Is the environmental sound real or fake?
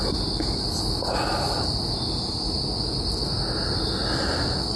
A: real